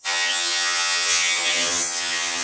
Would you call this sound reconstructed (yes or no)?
yes